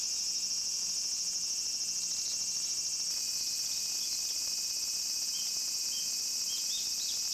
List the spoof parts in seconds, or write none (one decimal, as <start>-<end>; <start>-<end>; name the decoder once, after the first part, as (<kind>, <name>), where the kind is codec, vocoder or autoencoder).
none